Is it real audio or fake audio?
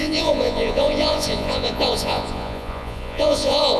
fake